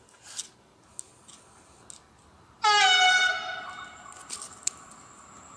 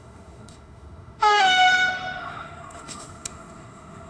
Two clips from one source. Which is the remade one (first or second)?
second